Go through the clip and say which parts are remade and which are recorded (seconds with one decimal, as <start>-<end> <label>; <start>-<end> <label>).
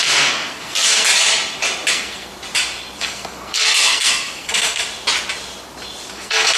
0.0-1.1 remade; 1.1-1.9 recorded; 1.9-2.3 remade; 2.3-3.0 recorded; 3.0-4.8 remade; 4.8-6.1 recorded; 6.1-6.6 remade